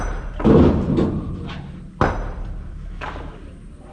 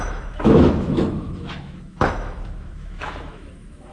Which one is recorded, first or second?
first